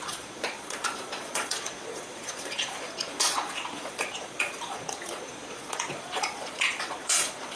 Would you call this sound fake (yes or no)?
yes